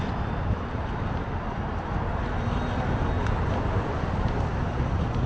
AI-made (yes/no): no